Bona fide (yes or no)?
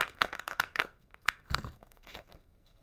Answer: no